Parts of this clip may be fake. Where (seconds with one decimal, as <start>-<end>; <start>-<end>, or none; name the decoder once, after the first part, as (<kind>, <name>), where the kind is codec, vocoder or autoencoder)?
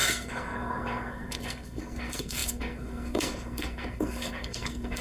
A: 0.0-5.0 (codec, SNAC)